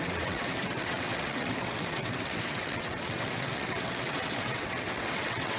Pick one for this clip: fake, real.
fake